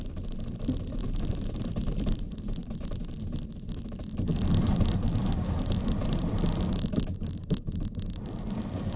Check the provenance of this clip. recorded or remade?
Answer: remade